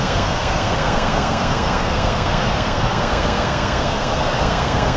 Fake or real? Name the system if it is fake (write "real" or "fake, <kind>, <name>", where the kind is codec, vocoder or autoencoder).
fake, codec, SNAC